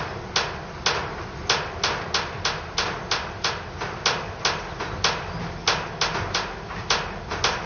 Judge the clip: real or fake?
real